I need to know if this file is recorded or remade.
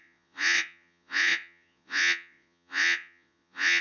remade